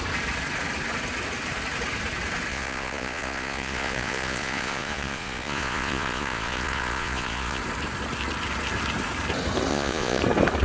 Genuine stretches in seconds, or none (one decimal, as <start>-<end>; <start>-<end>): 0.0-2.5; 7.6-9.7; 10.2-10.6